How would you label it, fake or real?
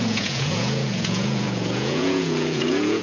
fake